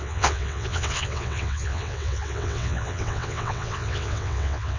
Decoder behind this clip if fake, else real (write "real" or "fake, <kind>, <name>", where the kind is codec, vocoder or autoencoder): fake, vocoder, WaveNeXt